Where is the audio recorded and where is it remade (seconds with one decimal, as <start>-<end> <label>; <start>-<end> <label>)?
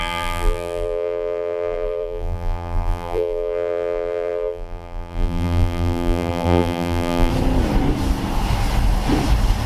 0.0-7.3 remade; 7.3-9.7 recorded